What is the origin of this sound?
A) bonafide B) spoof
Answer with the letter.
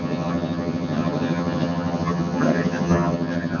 B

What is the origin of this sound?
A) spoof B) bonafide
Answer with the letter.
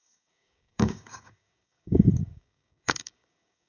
A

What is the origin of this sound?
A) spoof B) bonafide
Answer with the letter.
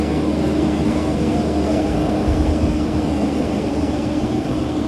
A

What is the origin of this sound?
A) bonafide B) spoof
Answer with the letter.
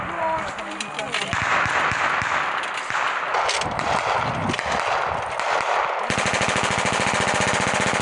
A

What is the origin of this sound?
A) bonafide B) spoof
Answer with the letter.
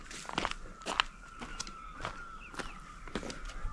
A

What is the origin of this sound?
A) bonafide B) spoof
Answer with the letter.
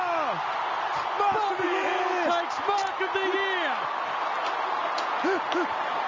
A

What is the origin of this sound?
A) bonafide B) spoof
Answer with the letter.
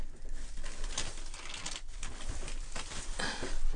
A